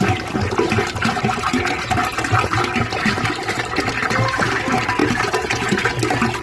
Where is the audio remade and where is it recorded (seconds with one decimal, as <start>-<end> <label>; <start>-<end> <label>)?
0.0-5.0 recorded; 5.0-5.9 remade; 5.9-6.4 recorded